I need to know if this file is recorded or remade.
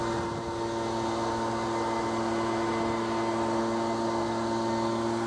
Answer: recorded